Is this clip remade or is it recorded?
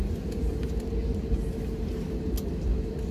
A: recorded